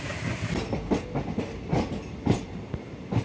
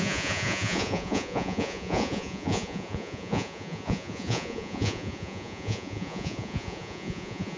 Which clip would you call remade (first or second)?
second